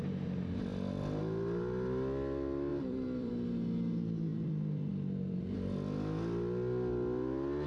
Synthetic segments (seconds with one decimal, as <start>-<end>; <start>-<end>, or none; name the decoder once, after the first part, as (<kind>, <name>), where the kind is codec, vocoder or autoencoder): 2.7-3.3 (vocoder, BigVGAN v2); 4.3-4.9